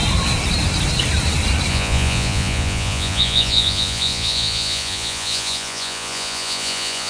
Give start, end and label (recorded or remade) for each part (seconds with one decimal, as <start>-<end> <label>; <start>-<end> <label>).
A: 0.0-1.7 recorded; 1.7-7.1 remade